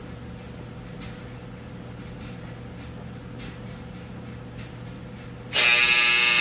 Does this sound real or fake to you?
real